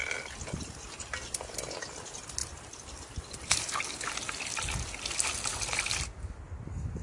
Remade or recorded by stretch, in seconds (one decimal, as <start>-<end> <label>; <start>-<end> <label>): 0.0-7.0 recorded